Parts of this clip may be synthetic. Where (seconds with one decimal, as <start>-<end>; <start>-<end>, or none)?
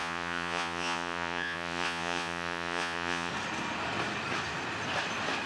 0.0-3.3